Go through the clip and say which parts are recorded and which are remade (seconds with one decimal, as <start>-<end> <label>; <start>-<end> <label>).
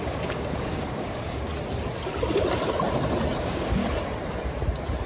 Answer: 0.0-1.5 remade; 1.5-3.4 recorded; 3.4-3.8 remade; 3.8-5.1 recorded